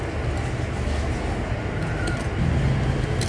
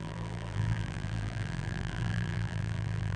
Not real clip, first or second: second